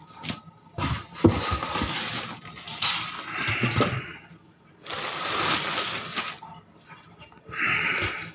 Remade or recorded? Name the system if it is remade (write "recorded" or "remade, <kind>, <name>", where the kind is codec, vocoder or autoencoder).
recorded